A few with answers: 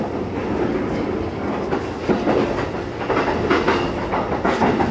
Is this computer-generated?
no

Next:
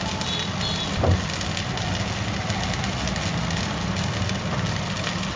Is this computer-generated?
no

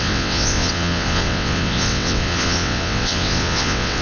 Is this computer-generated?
yes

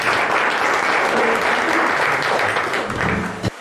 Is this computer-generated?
no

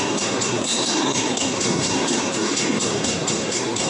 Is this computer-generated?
yes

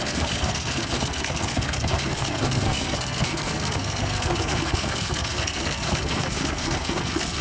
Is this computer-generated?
yes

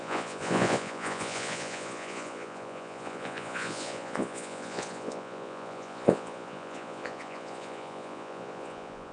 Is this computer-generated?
yes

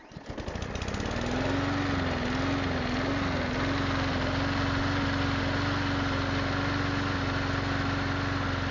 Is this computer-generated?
no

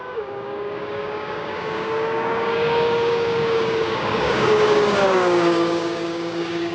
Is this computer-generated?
yes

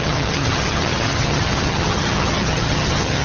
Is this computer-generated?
yes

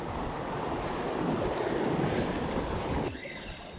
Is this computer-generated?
no